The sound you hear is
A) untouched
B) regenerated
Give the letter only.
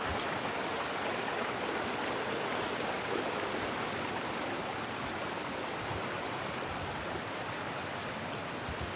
A